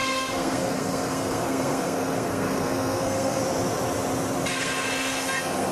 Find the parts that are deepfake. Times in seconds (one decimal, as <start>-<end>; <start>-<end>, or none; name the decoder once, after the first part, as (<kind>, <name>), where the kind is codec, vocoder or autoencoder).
0.0-3.4 (codec, SNAC); 4.5-5.7

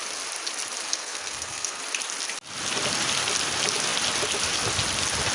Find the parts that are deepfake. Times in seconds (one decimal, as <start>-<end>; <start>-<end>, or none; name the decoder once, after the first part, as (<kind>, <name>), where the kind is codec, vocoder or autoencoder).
0.9-1.8 (codec, SNAC)

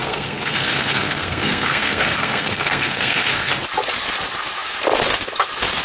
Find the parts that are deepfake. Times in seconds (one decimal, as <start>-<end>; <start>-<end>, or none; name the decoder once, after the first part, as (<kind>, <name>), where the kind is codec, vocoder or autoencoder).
0.0-3.5 (codec, SNAC)

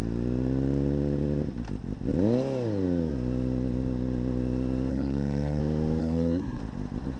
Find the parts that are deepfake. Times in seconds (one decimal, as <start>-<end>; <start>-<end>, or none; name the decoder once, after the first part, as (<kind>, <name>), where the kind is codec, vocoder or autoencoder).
4.9-5.6 (codec, SNAC); 6.0-6.6

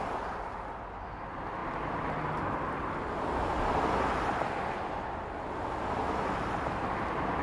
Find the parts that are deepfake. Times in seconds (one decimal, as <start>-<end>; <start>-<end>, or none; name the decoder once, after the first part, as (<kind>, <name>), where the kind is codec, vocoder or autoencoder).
none

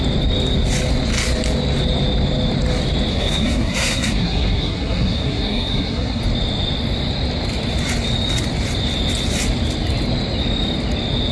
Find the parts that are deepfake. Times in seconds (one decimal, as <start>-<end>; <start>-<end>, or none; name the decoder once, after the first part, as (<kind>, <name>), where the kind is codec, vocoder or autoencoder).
3.1-6.2 (codec, SNAC)